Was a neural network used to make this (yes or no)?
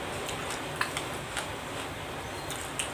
no